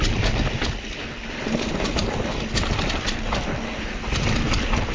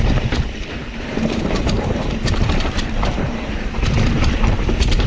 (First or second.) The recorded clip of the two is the first